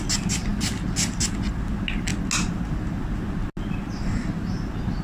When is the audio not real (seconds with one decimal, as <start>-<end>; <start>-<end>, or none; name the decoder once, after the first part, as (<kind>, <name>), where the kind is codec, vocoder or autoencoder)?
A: none